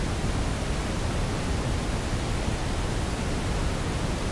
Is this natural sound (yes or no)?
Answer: yes